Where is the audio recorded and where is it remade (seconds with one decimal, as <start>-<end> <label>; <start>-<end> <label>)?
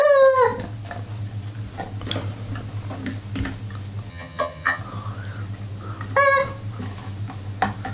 0.0-4.1 recorded; 4.1-4.8 remade; 4.8-7.9 recorded